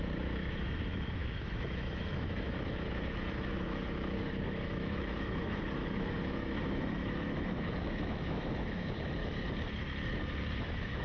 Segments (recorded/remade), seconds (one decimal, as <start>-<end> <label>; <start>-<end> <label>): 0.0-9.2 remade; 9.2-10.6 recorded; 10.6-11.0 remade